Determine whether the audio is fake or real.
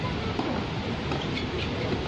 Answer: real